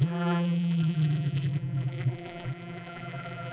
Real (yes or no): no